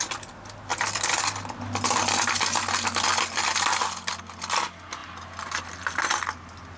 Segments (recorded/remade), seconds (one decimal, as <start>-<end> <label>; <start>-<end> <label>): 0.0-5.0 recorded; 5.0-5.6 remade; 5.6-6.8 recorded